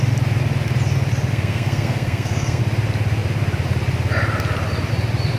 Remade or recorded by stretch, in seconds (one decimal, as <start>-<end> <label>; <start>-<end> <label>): 0.0-1.3 recorded; 1.3-2.6 remade; 2.6-5.4 recorded